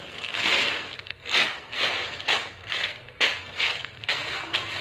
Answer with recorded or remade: remade